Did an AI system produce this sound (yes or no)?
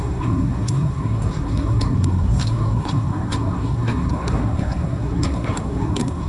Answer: yes